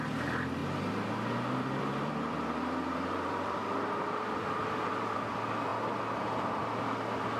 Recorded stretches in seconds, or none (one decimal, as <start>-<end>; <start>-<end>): 0.6-1.3; 5.7-6.2